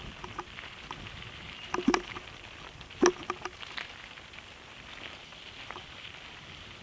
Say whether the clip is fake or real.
real